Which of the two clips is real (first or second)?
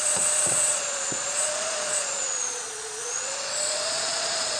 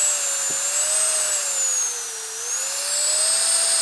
second